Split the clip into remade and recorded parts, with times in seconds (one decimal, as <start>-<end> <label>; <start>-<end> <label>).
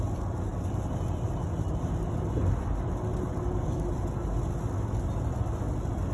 0.0-6.1 recorded